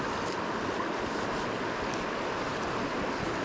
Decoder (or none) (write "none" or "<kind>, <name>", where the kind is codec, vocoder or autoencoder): none